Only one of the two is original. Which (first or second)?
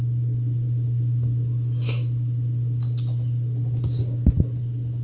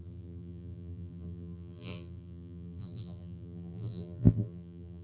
first